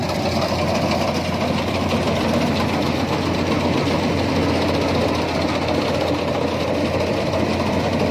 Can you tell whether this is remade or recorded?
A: recorded